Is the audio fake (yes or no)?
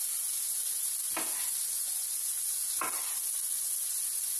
no